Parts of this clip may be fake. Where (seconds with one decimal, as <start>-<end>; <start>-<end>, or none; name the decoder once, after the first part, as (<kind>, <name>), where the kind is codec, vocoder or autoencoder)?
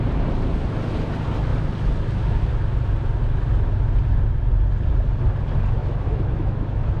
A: 5.8-7.0 (autoencoder, DAC-VAE)